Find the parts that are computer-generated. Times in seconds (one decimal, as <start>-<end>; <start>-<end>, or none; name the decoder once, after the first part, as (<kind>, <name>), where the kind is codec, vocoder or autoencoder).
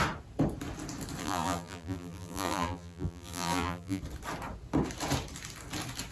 1.2-4.0 (vocoder, BigVGAN v2)